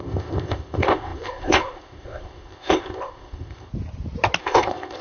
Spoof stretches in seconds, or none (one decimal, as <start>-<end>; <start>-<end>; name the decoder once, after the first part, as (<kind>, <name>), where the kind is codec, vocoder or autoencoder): 0.0-3.7 (codec, ZipCodec); 4.4-5.0